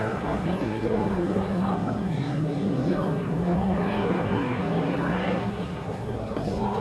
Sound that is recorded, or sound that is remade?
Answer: remade